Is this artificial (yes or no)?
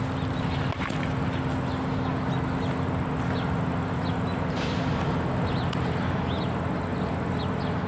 no